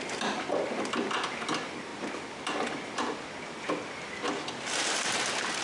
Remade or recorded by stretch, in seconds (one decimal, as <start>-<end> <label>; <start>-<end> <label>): 0.0-5.6 recorded